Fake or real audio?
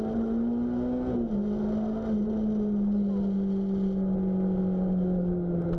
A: real